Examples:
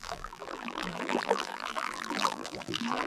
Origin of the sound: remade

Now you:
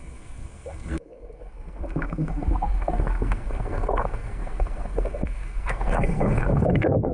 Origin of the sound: remade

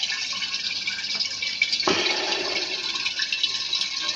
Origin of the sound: recorded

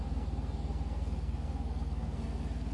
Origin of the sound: remade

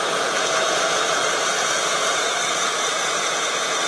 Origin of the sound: remade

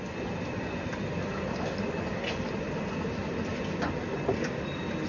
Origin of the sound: recorded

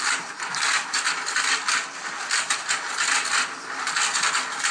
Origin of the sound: remade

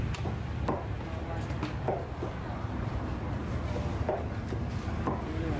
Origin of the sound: recorded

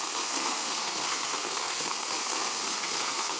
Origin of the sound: remade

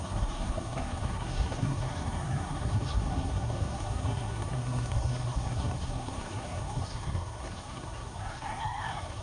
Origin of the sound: remade